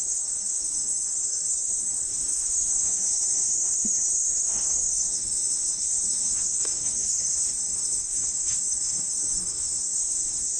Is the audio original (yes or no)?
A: no